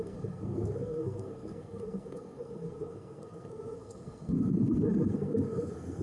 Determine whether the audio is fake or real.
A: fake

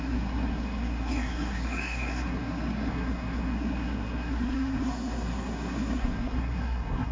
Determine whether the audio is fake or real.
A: fake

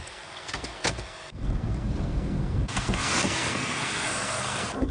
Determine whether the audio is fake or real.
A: fake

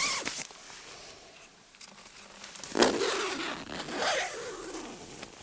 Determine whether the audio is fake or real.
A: real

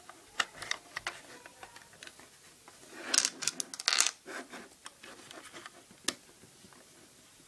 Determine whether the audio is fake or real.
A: real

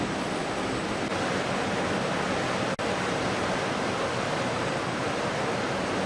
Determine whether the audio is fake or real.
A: real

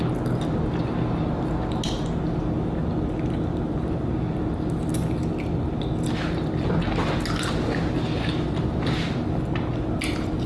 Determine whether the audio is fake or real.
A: real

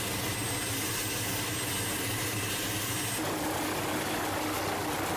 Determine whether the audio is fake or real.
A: real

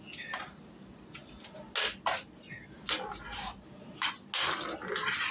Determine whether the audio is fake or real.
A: real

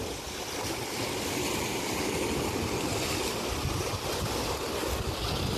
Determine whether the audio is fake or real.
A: real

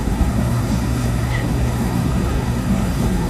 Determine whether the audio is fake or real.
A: fake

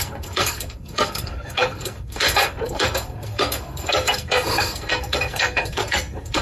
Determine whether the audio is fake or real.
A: fake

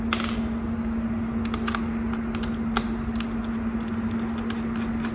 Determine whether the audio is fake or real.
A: real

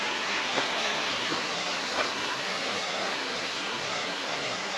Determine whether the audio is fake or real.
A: fake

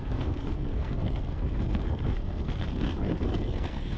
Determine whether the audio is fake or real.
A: fake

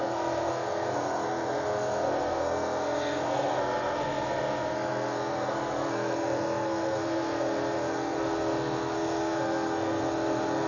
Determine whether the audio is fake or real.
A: fake